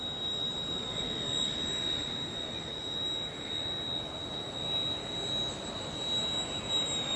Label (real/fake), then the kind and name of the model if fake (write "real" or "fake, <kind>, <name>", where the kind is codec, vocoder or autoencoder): real